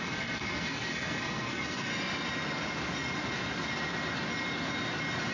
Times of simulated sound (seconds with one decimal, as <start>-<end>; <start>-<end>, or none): 0.0-1.9